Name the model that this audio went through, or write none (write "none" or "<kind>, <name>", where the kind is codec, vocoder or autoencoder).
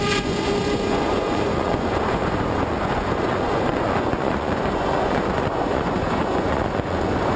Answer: vocoder, Vocos